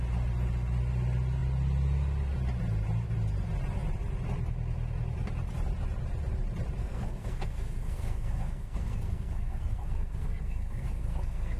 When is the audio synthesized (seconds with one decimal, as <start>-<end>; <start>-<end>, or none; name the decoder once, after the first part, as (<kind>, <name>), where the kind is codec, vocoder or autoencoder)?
6.8-11.6 (codec, SNAC)